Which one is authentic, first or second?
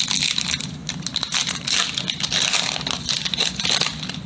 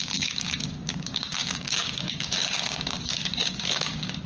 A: first